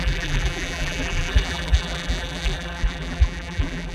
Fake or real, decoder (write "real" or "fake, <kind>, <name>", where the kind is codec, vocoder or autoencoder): fake, vocoder, BigVGAN v2